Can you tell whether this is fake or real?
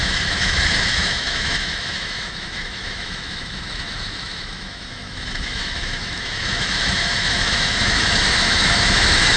fake